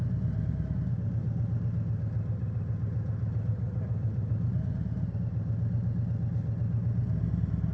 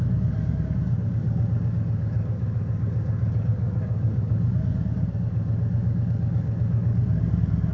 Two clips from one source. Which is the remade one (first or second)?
second